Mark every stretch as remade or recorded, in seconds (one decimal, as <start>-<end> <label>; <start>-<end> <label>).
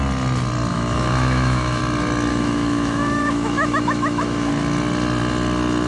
0.0-0.7 recorded; 0.7-1.8 remade; 1.8-2.3 recorded; 2.3-4.5 remade; 4.5-5.9 recorded